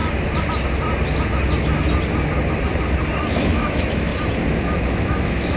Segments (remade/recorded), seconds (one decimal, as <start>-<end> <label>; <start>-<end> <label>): 0.0-3.3 recorded; 3.3-4.1 remade; 4.1-4.6 recorded; 4.6-5.6 remade